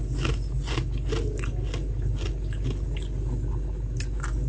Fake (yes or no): no